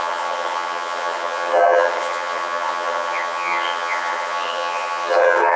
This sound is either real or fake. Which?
fake